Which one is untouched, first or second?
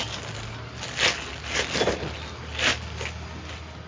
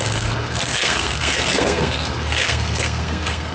first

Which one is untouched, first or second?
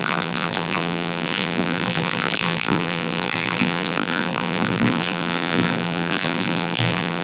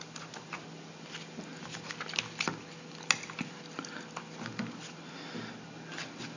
second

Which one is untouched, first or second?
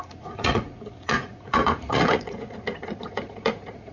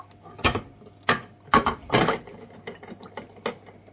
second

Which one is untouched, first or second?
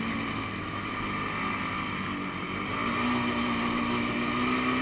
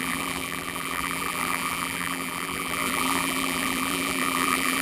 first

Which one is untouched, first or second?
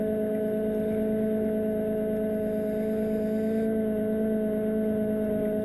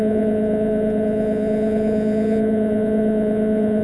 first